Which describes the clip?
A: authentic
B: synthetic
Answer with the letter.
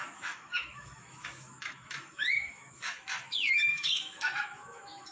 B